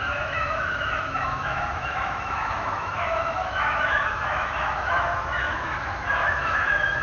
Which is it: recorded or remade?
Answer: remade